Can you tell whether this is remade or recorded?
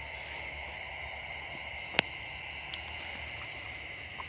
recorded